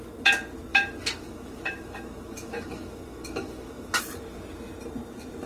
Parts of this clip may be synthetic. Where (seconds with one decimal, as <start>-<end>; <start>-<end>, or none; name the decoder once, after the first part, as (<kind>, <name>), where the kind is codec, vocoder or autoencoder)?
0.7-4.0 (autoencoder, DAC-VAE)